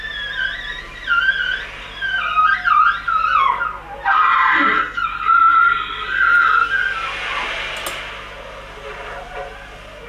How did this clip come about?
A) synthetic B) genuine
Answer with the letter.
B